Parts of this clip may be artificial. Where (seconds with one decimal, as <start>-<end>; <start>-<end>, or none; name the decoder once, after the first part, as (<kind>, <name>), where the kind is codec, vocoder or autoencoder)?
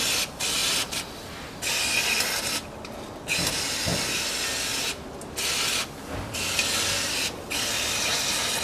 none